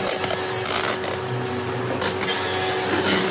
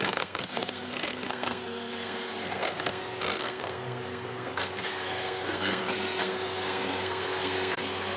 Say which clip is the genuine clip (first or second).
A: first